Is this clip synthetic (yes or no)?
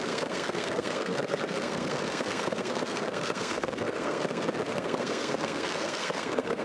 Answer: yes